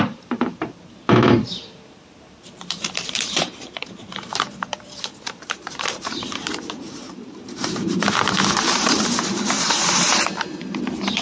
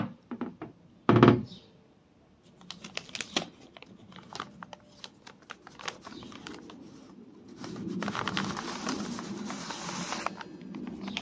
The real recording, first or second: second